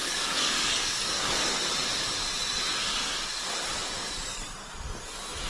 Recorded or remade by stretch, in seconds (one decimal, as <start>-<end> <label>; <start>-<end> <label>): 0.0-1.6 remade; 1.6-5.5 recorded